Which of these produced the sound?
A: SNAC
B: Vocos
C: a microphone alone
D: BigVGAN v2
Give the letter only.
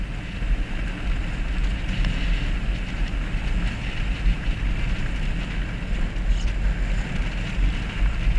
C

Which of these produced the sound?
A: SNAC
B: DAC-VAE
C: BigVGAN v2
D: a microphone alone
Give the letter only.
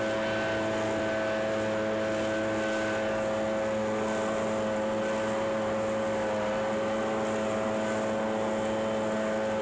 D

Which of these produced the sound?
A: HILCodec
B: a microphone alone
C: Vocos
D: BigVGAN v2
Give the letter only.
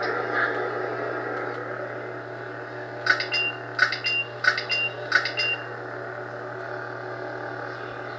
B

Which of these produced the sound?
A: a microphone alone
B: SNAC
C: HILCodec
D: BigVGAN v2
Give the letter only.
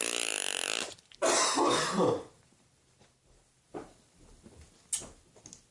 A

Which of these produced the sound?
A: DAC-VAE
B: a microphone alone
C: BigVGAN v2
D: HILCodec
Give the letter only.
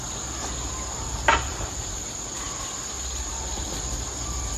B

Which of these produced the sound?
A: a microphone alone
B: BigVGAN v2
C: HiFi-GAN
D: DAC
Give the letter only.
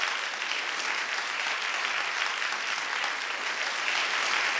A